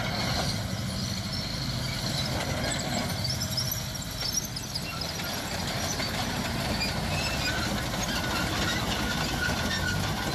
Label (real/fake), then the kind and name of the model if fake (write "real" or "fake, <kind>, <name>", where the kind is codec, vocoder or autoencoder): real